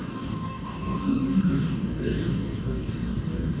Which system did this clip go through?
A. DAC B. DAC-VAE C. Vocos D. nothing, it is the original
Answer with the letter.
A